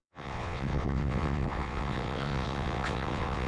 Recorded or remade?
remade